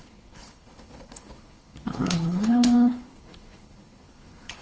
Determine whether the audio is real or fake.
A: fake